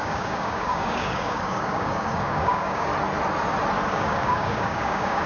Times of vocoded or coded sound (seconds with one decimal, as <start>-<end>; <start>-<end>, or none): 0.0-2.9; 3.9-5.3